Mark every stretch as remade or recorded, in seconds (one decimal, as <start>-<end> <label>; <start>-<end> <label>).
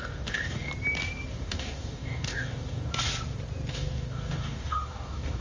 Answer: 0.0-0.7 remade; 0.7-1.3 recorded; 1.3-2.9 remade; 2.9-3.7 recorded; 3.7-5.4 remade